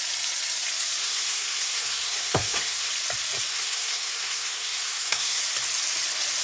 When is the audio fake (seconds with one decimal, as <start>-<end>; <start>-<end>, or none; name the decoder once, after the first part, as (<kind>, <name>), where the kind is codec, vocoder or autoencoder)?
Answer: 1.0-2.9 (codec, SNAC); 3.5-5.4